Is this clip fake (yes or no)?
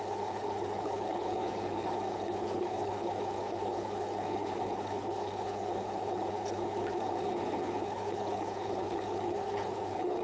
yes